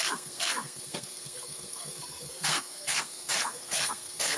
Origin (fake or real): fake